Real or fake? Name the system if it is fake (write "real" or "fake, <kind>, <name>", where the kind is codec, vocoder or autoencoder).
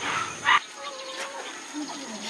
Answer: fake, vocoder, BigVGAN v2